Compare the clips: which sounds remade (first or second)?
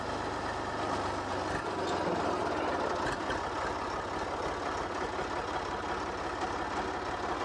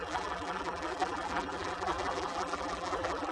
second